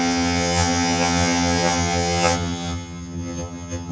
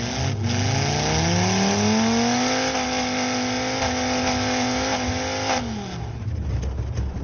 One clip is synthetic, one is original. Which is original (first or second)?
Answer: second